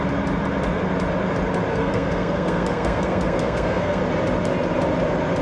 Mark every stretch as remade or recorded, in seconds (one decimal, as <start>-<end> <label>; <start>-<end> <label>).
0.0-1.7 recorded; 1.7-4.0 remade; 4.0-5.4 recorded